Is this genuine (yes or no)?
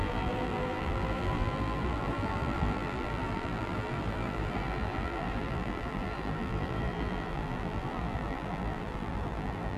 no